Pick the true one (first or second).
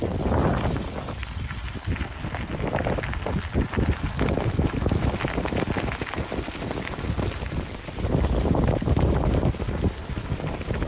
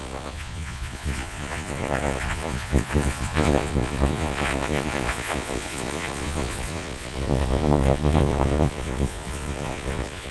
first